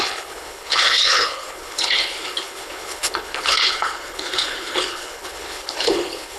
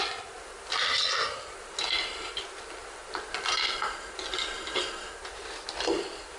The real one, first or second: second